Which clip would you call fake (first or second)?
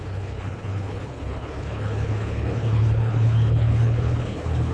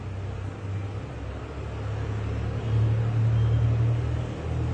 first